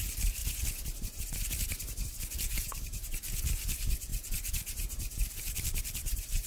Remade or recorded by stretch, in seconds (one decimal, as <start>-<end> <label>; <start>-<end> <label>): 0.0-0.4 remade; 0.4-1.2 recorded; 1.2-6.5 remade